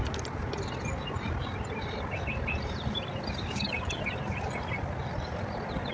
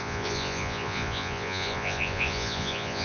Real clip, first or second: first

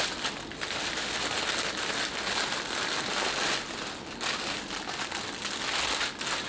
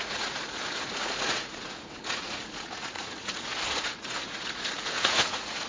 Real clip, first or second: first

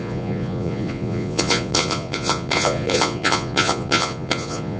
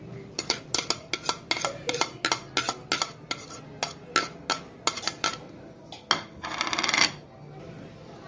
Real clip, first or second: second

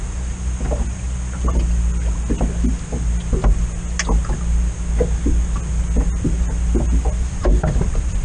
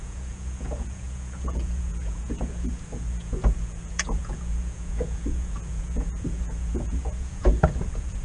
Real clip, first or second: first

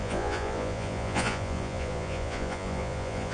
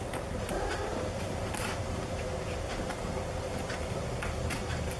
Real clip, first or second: second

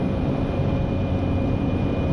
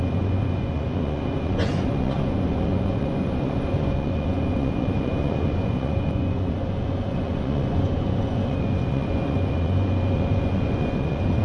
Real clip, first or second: first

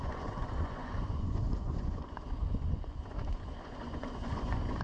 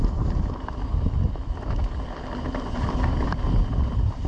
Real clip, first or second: second